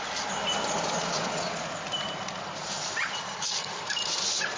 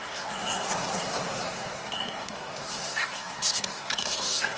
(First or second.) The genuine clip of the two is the first